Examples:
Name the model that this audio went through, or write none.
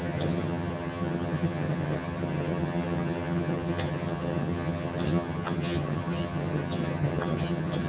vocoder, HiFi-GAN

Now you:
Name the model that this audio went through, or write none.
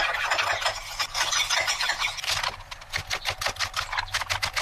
none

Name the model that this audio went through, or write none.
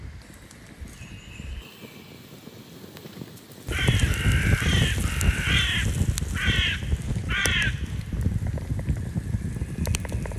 none